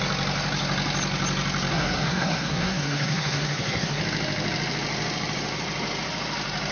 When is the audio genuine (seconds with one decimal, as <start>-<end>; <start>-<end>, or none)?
0.0-1.7; 4.0-6.7